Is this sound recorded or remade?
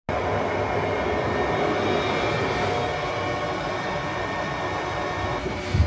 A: recorded